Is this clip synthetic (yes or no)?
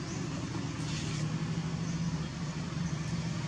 no